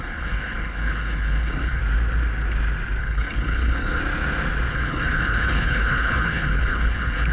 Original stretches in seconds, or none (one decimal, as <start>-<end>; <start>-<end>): 1.8-3.0; 4.0-4.7